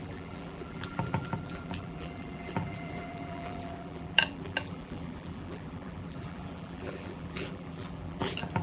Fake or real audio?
fake